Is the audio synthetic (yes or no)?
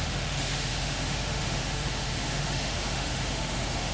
yes